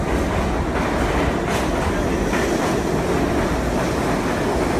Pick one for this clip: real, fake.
real